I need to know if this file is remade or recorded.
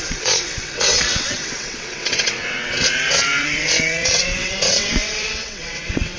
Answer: remade